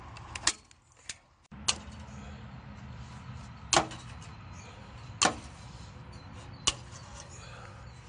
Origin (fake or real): real